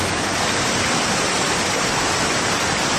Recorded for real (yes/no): yes